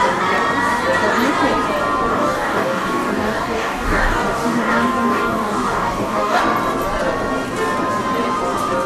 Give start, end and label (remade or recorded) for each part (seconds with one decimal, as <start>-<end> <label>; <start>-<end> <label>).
0.0-2.1 recorded; 2.1-6.4 remade; 6.4-8.9 recorded